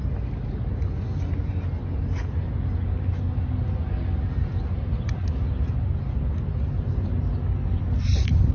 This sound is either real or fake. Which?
real